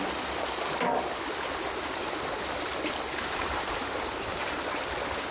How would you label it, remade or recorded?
recorded